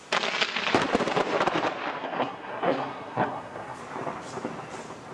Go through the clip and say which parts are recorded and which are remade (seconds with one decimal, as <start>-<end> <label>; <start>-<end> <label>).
0.0-2.0 recorded; 2.0-3.8 remade; 3.8-5.1 recorded